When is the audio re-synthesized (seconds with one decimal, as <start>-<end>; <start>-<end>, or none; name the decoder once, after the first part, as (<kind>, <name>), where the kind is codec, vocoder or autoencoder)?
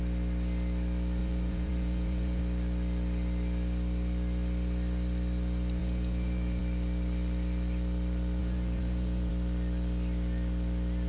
1.2-2.4 (vocoder, Vocos); 5.8-6.6; 8.4-9.3